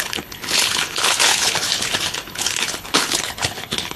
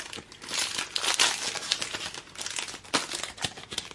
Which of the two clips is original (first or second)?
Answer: second